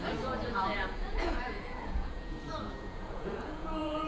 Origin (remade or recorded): remade